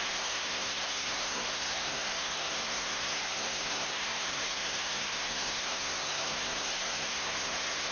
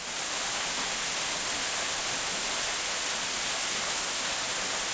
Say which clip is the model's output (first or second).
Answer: first